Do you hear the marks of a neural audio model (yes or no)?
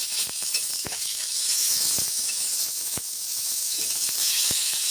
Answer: yes